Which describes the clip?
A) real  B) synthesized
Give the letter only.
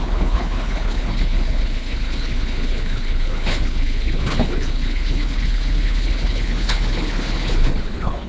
B